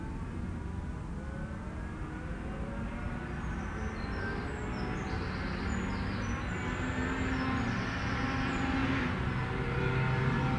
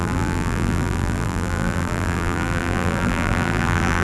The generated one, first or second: second